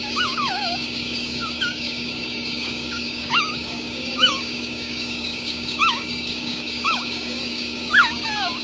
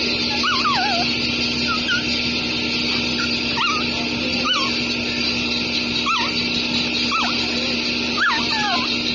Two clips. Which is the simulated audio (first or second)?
first